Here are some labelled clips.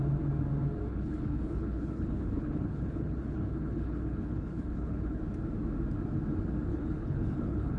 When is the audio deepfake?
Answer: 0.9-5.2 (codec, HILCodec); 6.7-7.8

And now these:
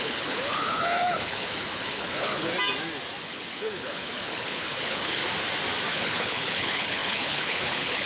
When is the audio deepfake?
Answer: 0.0-2.5 (codec, HILCodec); 3.2-5.2; 5.9-8.1

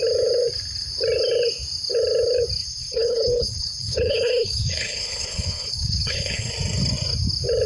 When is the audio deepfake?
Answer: 2.6-6.5 (codec, HILCodec)

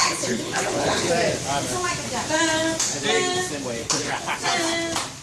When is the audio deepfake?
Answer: 0.0-1.1 (codec, HILCodec); 3.8-4.3

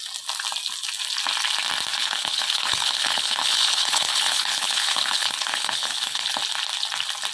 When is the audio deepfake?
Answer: 2.0-6.3 (codec, HILCodec)

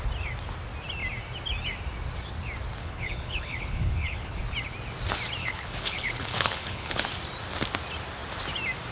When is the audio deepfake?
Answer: 2.8-4.4 (codec, HILCodec); 5.4-7.0

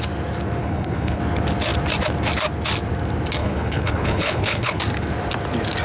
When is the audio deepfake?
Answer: 0.6-1.2 (codec, HILCodec); 3.4-4.8

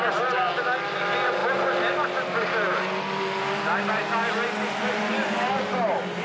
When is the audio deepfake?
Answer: none